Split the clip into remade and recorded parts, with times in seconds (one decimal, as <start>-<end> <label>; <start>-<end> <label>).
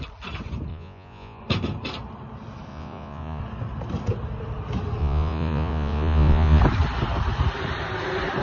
0.0-0.7 recorded; 0.7-1.4 remade; 1.4-2.7 recorded; 2.7-3.4 remade; 3.4-5.0 recorded; 5.0-6.6 remade; 6.6-8.4 recorded